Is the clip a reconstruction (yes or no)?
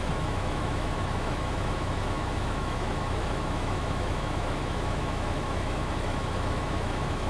yes